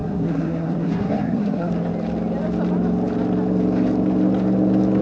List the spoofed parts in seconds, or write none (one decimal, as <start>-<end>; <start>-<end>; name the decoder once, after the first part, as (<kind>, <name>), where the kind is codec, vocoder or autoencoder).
0.0-1.7 (codec, SNAC)